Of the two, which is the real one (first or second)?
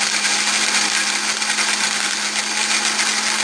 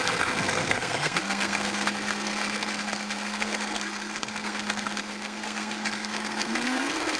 first